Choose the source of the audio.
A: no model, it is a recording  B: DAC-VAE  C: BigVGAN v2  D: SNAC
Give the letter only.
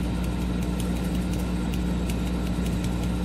A